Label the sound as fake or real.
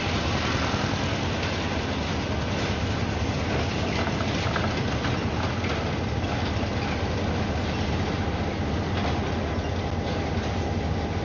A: real